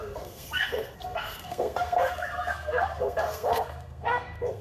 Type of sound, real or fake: fake